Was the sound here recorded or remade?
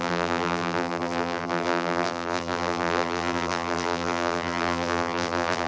remade